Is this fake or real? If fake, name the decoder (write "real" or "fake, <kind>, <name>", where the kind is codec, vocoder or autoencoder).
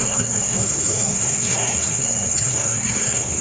fake, codec, SNAC